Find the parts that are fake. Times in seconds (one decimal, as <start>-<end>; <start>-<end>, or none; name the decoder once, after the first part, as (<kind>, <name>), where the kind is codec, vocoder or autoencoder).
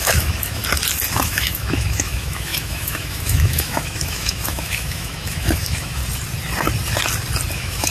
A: 0.0-0.6 (autoencoder, DAC-VAE); 1.1-6.0; 7.5-7.9